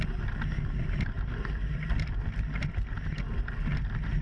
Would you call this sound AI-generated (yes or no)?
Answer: no